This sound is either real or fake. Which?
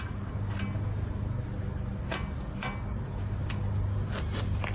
real